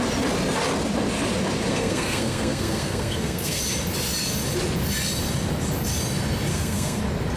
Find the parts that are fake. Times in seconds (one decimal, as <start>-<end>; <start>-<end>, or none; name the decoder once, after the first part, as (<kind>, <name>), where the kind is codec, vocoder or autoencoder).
1.7-3.6 (codec, SNAC); 6.5-7.0